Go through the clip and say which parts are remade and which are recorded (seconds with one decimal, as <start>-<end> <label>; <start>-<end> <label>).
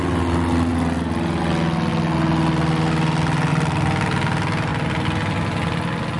0.0-6.2 recorded